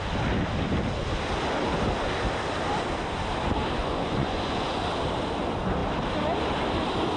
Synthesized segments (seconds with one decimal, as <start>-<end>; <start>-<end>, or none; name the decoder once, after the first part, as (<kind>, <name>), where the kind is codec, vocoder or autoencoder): 3.8-4.8 (vocoder, Vocos)